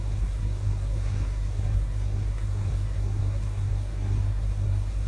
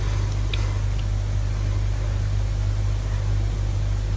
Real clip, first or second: second